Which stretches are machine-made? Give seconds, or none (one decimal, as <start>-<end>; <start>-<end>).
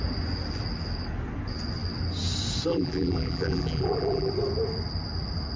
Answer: 2.7-4.3